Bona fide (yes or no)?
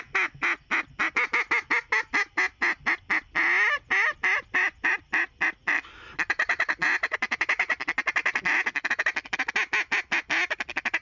yes